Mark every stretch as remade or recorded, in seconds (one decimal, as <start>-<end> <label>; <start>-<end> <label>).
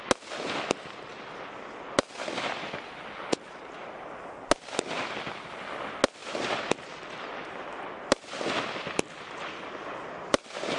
0.0-10.8 recorded